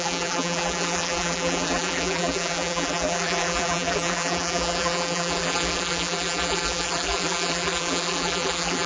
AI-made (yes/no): yes